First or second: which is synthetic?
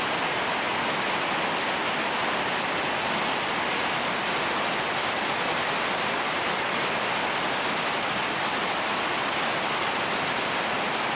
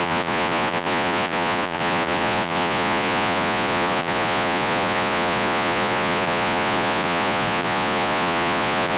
second